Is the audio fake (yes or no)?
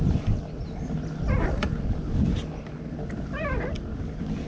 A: no